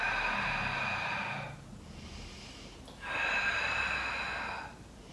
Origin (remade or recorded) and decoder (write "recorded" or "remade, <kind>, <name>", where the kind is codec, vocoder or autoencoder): recorded